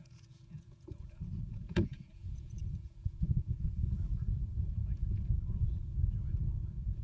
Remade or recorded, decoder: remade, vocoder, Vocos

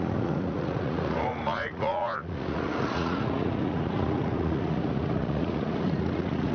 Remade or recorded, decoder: remade, vocoder, Vocos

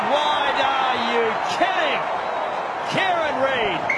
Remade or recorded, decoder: recorded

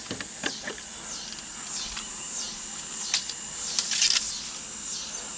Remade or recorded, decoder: recorded